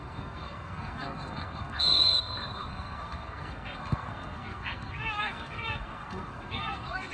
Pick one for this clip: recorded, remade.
remade